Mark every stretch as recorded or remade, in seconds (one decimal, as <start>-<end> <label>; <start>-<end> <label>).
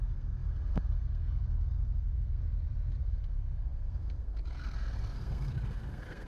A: 0.0-2.4 remade; 2.4-3.0 recorded; 3.0-6.3 remade